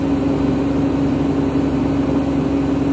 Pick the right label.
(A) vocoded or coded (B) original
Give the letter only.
B